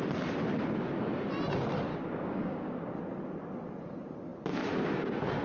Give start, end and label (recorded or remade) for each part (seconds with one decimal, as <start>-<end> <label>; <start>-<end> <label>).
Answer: 0.0-1.9 recorded; 1.9-2.8 remade; 2.8-5.4 recorded